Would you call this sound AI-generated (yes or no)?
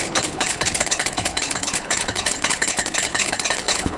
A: yes